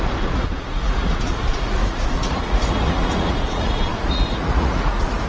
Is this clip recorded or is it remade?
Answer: remade